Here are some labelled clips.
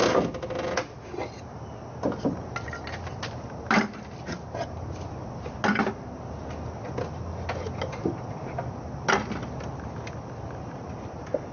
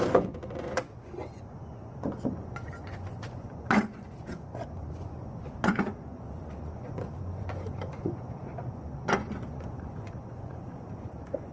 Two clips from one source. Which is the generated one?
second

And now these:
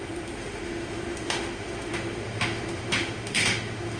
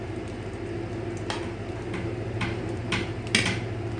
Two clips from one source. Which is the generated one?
first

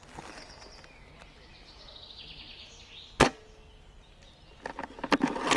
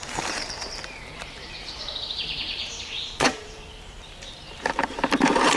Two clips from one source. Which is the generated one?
second